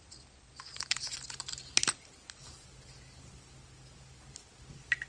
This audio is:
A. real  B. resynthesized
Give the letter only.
A